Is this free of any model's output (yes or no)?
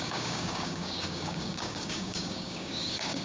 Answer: no